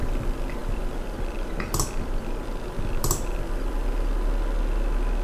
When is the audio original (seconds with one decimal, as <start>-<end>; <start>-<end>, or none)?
0.0-5.2